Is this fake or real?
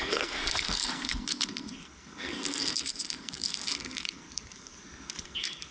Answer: fake